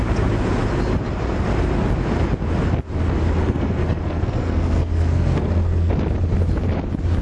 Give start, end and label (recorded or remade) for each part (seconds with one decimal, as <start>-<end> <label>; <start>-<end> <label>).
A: 0.0-3.4 recorded; 3.4-5.9 remade; 5.9-7.2 recorded

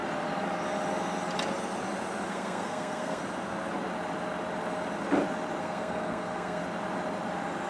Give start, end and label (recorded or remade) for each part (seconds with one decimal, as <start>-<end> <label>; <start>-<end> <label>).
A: 0.0-2.3 recorded; 2.3-3.2 remade; 3.2-5.6 recorded; 5.6-6.6 remade; 6.6-7.7 recorded

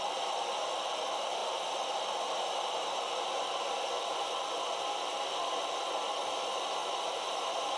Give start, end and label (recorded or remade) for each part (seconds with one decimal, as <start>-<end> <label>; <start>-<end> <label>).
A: 0.0-6.8 remade; 6.8-7.8 recorded